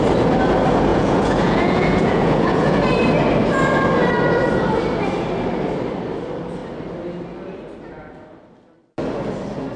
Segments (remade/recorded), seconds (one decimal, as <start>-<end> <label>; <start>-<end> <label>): 0.0-0.9 recorded; 0.9-2.8 remade; 2.8-9.8 recorded